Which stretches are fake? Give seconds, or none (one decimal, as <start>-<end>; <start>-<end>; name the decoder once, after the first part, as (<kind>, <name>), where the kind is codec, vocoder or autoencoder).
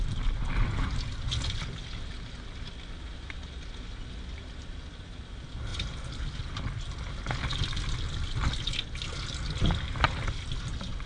none